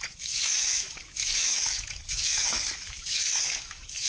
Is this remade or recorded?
remade